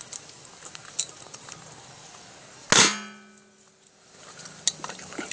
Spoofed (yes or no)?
no